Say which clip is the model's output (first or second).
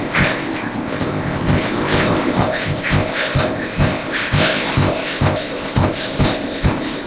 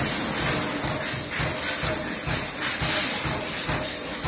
first